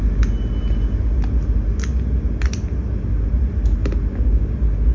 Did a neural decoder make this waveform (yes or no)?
no